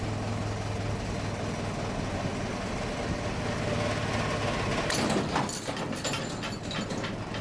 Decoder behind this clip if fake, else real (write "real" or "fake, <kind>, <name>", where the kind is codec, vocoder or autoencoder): real